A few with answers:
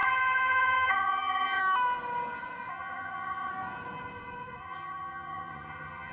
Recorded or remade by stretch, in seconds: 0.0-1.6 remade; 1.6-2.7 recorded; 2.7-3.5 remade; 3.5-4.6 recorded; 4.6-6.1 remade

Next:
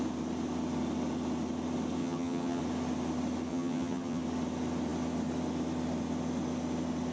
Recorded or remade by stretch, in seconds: 0.0-2.0 recorded; 2.0-2.6 remade; 2.6-3.5 recorded; 3.5-4.2 remade; 4.2-7.1 recorded

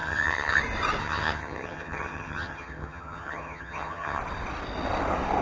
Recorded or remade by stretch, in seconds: 0.0-0.6 remade; 0.6-1.0 recorded; 1.0-4.2 remade; 4.2-5.4 recorded

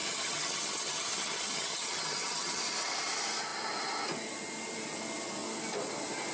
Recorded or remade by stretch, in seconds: 0.0-2.6 remade; 2.6-6.3 recorded

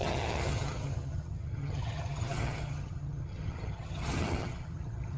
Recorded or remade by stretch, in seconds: 0.0-5.2 remade

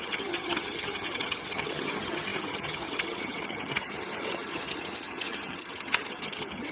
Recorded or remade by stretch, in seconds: 0.0-6.7 remade